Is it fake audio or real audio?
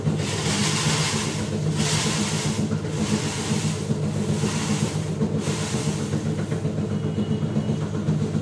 real